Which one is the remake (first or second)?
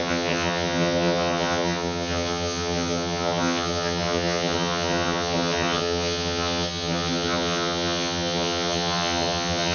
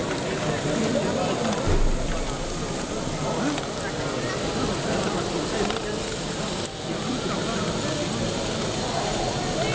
first